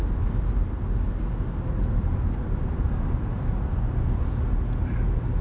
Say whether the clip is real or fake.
real